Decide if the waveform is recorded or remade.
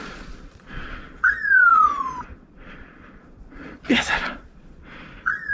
remade